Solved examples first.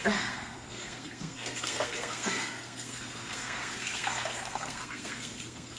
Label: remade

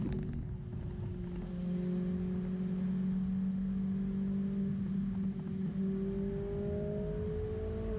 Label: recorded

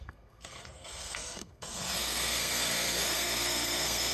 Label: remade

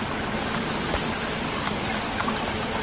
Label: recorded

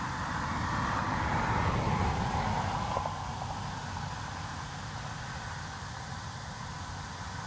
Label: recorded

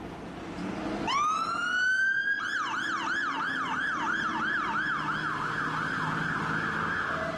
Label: recorded